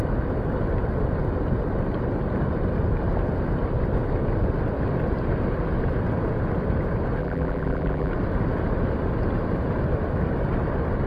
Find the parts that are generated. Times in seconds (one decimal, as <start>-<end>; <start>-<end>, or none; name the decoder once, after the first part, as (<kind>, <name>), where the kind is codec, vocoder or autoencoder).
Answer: 7.2-8.1 (vocoder, BigVGAN v2)